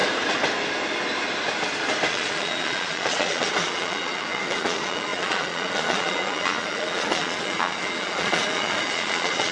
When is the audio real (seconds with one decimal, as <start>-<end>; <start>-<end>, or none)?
0.0-2.1